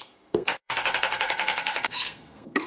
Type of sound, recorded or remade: remade